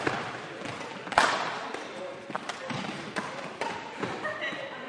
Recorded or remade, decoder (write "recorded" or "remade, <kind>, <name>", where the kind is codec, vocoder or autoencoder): recorded